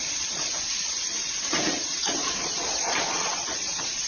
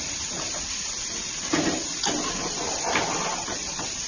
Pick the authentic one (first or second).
second